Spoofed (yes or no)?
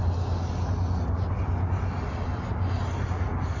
no